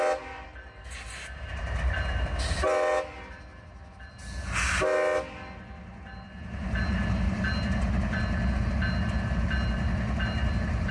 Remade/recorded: recorded